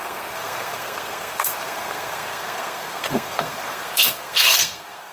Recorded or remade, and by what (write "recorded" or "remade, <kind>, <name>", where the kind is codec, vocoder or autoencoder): remade, codec, SNAC